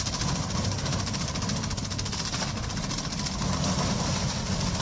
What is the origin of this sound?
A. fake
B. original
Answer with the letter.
B